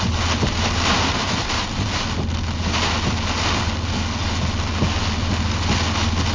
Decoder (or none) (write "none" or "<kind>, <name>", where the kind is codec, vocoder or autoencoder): none